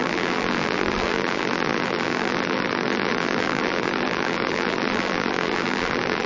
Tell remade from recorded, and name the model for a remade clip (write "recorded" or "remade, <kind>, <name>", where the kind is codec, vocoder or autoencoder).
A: remade, vocoder, BigVGAN v2